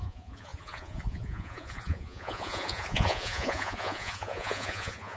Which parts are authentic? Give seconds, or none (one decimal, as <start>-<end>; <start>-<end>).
none